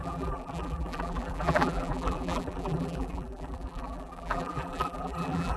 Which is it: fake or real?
fake